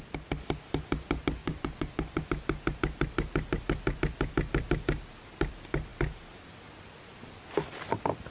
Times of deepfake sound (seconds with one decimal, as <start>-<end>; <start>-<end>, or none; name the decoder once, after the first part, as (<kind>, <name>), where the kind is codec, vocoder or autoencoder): 1.4-2.3 (vocoder, Vocos)